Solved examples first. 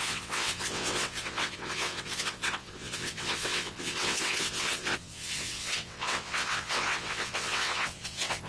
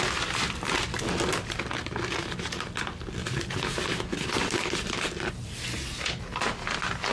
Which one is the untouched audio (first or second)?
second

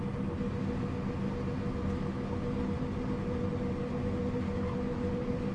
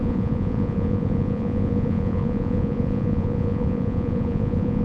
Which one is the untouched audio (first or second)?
first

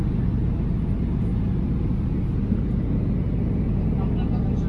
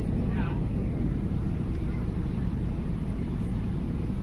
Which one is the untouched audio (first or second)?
first